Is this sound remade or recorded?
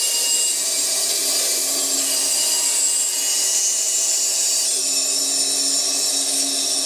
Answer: recorded